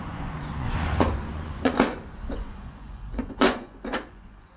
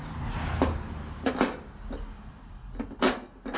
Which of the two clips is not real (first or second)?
first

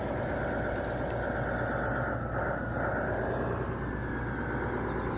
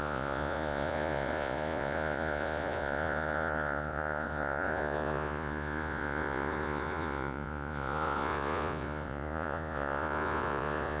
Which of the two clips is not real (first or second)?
second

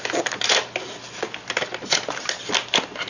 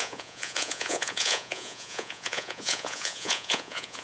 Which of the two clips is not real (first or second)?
second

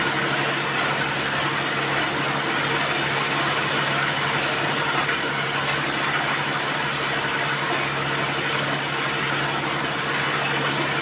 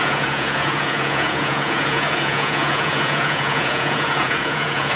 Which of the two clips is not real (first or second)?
second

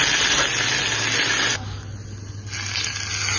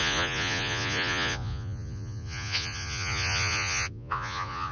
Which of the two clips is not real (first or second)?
second